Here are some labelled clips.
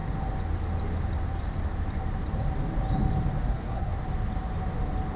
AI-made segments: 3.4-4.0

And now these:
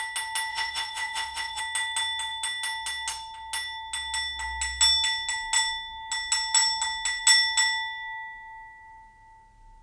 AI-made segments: 0.5-1.6

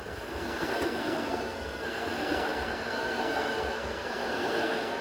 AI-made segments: 0.0-5.0

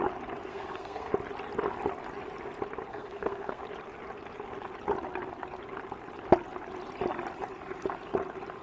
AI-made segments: 0.5-1.1; 2.9-3.6